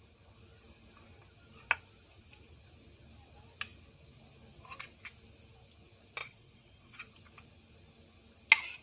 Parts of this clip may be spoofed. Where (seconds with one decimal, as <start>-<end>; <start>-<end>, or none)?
6.2-7.1

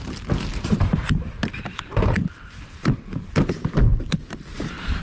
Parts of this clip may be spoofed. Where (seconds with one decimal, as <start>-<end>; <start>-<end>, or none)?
0.5-3.2